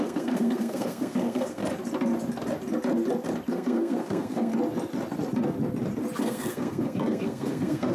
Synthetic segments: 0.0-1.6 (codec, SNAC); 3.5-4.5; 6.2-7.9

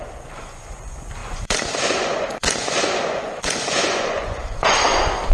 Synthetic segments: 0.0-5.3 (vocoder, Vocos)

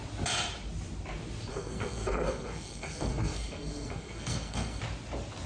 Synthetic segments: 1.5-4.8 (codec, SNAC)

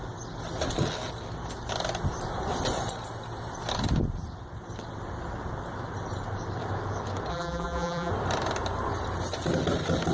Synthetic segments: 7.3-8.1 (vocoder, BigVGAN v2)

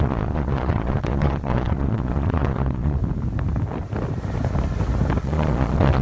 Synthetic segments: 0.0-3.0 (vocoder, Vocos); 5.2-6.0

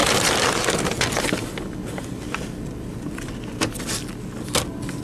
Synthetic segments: none